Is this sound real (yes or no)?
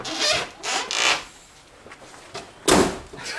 yes